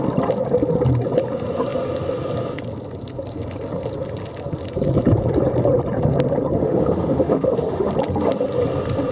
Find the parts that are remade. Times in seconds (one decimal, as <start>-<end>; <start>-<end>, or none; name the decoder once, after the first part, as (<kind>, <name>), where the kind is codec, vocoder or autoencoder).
6.6-7.9 (autoencoder, DAC-VAE)